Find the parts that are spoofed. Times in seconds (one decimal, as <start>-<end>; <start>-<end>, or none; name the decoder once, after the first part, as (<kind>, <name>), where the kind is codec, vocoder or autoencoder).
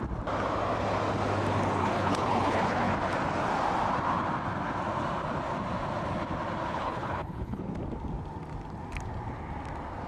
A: 1.8-2.9 (codec, HILCodec); 6.7-7.6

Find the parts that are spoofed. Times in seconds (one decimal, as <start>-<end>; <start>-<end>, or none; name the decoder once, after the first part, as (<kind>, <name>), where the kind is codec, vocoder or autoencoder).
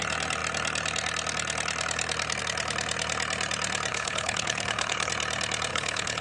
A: 3.9-5.1 (codec, HILCodec); 5.7-6.2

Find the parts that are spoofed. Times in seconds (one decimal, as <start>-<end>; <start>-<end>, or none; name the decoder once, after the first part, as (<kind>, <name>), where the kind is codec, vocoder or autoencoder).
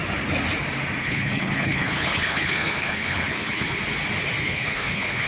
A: 1.0-3.8 (codec, HILCodec); 4.4-5.3